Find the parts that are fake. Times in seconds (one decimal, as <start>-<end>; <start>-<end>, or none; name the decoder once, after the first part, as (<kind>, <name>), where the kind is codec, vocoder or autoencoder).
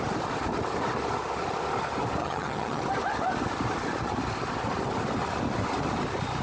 2.2-2.8 (vocoder, HiFi-GAN)